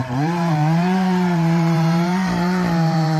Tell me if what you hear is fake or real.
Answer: fake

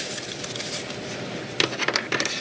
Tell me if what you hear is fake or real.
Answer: real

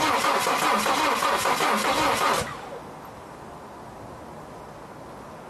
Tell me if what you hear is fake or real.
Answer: real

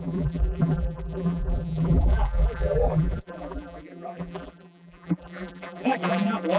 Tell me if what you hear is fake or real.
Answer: fake